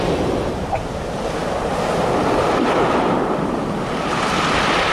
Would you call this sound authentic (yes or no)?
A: no